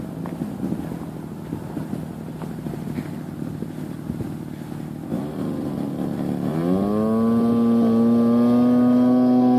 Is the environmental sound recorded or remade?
recorded